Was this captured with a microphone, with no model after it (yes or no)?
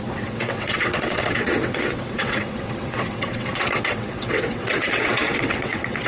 no